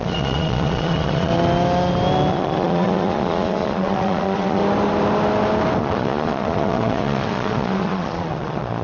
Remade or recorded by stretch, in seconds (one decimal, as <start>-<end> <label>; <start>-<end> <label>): 0.0-1.3 remade; 1.3-2.3 recorded; 2.3-4.6 remade; 4.6-5.8 recorded; 5.8-8.8 remade